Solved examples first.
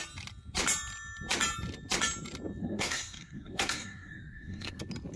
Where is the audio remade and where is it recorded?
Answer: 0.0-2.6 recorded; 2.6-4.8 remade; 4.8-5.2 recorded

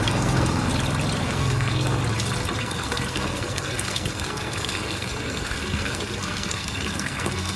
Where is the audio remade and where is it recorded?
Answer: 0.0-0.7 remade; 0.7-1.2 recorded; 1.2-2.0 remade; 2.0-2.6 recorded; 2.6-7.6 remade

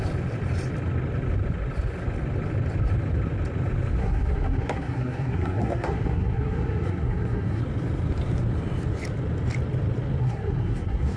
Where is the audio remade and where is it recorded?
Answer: 0.0-4.0 recorded; 4.0-7.6 remade; 7.6-10.2 recorded; 10.2-11.2 remade

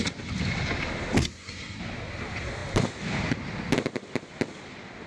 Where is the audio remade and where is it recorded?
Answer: 0.0-1.2 recorded; 1.2-1.8 remade; 1.8-5.1 recorded

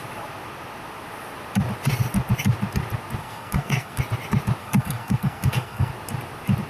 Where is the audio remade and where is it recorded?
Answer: 0.0-3.2 recorded; 3.2-4.0 remade; 4.0-4.6 recorded; 4.6-5.9 remade; 5.9-6.7 recorded